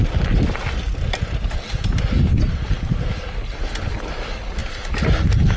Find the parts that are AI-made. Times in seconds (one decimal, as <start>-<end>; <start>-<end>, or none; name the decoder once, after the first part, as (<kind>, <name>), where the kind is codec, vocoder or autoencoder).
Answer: none